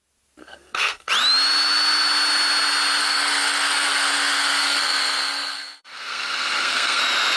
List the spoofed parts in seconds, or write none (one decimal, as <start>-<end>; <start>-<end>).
0.4-1.1; 3.0-7.0